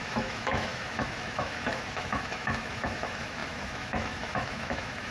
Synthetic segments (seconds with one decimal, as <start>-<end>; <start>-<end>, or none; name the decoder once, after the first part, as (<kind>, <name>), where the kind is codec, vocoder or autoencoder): 0.0-5.1 (autoencoder, DAC-VAE)